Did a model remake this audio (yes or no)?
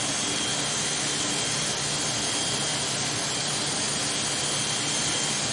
no